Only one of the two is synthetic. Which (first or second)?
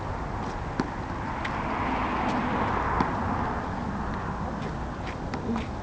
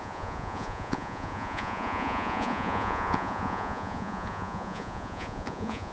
second